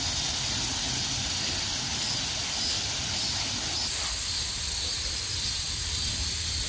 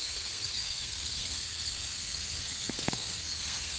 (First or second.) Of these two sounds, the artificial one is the second